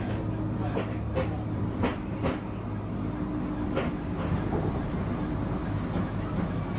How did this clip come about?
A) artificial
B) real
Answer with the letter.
B